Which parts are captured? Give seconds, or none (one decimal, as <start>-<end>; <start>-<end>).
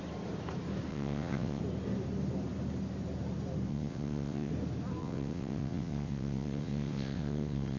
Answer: 0.0-0.9; 1.6-3.7; 4.5-5.0